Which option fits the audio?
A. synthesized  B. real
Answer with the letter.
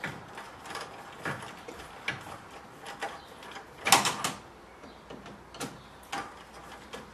B